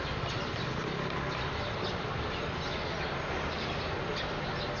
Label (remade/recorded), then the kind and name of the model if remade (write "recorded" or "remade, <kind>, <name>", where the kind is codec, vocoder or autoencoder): recorded